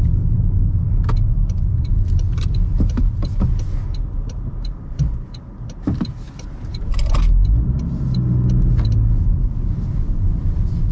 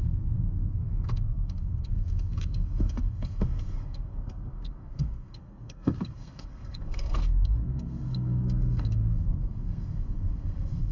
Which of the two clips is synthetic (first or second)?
second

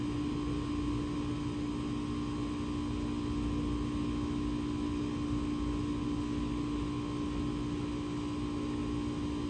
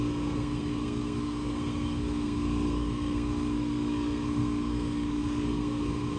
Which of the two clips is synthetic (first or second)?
second